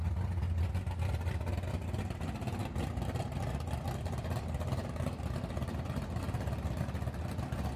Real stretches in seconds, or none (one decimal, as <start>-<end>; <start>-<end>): 0.0-7.8